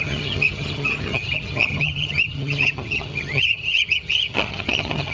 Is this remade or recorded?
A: remade